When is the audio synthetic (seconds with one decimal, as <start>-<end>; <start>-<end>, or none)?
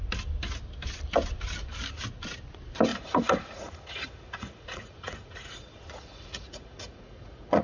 2.9-7.6